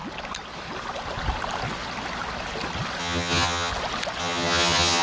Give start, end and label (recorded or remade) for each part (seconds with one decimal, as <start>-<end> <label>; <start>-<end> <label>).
0.0-3.0 recorded; 3.0-3.7 remade; 3.7-4.2 recorded; 4.2-5.0 remade